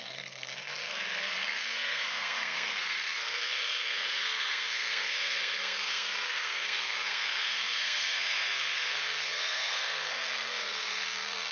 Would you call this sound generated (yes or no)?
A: yes